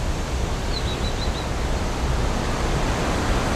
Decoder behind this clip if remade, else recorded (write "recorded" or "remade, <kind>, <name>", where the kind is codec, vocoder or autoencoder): recorded